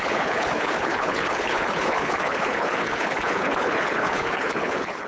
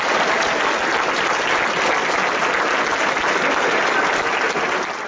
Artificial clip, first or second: first